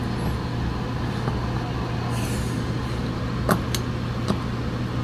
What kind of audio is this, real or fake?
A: real